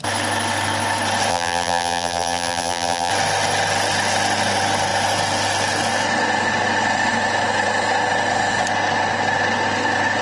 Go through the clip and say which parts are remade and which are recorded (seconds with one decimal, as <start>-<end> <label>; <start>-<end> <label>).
0.0-1.3 recorded; 1.3-3.1 remade; 3.1-10.2 recorded